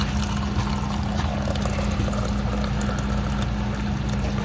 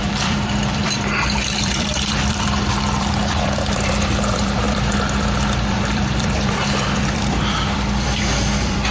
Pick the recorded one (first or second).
first